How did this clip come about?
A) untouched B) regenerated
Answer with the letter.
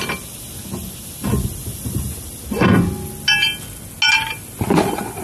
A